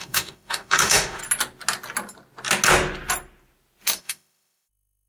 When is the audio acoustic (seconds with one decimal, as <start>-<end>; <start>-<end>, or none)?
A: 1.2-4.0